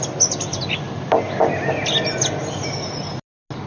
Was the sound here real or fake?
real